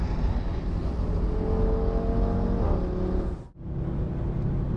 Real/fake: real